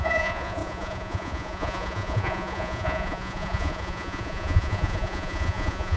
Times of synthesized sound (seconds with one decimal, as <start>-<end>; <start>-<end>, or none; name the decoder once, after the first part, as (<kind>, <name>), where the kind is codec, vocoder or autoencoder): 0.0-6.0 (vocoder, Vocos)